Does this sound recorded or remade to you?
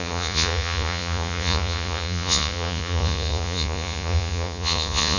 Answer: remade